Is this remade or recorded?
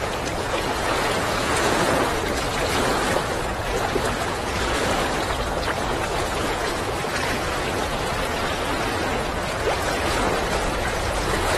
remade